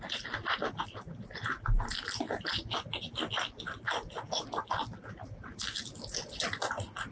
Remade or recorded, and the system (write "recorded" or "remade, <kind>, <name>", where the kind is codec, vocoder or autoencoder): recorded